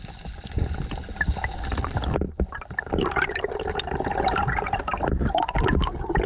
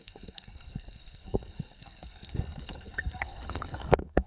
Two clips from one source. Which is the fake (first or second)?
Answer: second